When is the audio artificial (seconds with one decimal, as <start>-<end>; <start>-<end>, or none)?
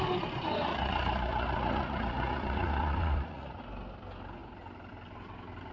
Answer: 0.7-3.6